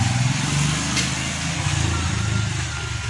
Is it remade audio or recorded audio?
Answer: recorded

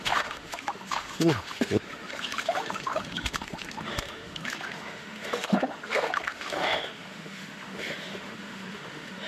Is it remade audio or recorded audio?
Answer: remade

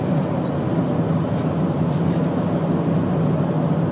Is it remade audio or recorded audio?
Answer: recorded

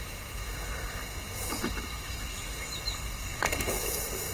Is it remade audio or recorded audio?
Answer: remade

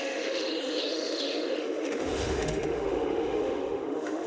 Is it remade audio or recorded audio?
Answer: remade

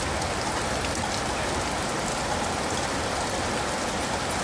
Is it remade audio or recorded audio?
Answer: recorded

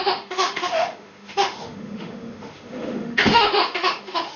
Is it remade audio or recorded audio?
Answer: remade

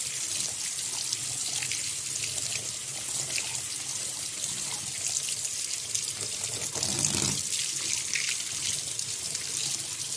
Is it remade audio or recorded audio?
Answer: recorded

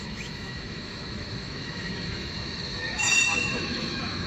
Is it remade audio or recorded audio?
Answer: remade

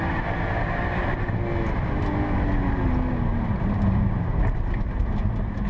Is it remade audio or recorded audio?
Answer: recorded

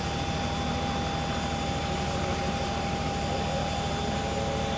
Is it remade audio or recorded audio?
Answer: recorded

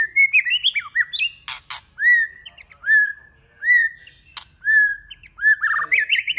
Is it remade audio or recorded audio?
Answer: recorded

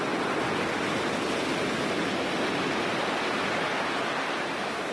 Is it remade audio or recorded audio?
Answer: recorded